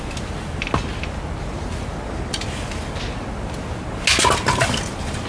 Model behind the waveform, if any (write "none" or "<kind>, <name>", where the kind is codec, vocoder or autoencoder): none